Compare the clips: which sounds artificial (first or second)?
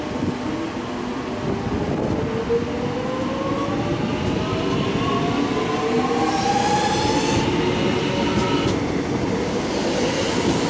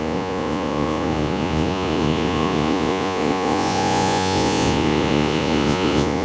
second